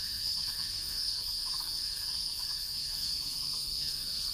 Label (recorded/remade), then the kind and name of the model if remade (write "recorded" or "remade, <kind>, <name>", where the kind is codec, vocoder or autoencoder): remade, codec, SNAC